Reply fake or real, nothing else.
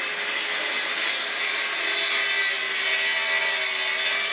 real